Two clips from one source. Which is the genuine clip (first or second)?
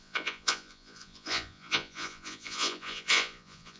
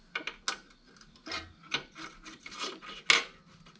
second